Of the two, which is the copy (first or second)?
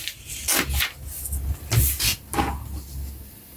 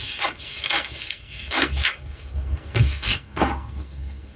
second